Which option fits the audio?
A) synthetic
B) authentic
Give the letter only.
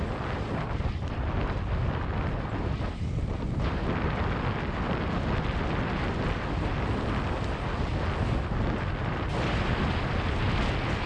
B